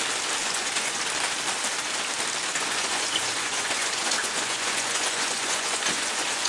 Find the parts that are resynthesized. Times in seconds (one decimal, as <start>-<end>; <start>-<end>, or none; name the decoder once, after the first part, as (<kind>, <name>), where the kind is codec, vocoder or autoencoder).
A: 0.4-1.0 (vocoder, Vocos); 2.5-6.5